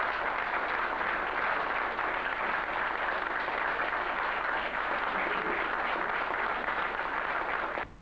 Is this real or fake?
real